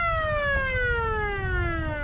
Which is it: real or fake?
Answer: real